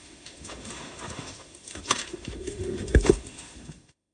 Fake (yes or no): yes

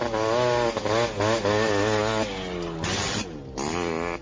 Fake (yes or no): no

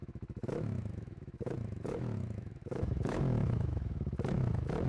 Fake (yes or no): yes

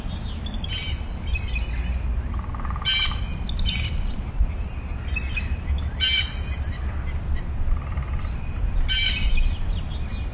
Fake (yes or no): no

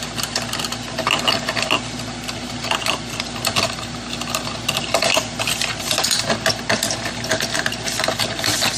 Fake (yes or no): no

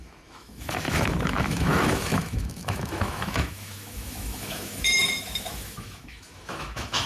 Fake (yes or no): yes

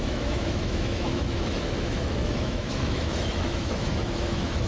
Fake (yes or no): yes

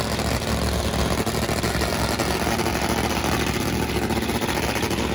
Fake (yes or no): no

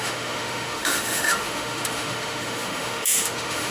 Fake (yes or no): yes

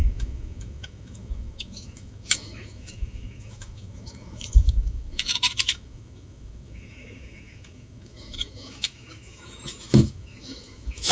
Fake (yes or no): yes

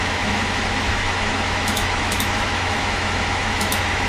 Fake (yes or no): yes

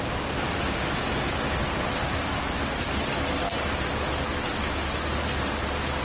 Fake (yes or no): no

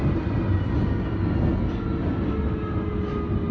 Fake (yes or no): no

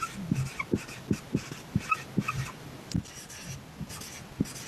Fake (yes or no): no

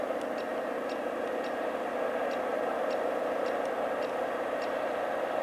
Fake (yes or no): no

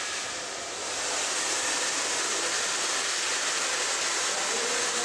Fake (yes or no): no